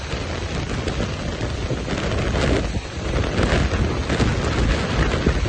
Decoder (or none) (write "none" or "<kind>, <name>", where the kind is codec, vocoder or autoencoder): none